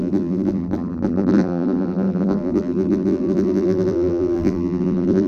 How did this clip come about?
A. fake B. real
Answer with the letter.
A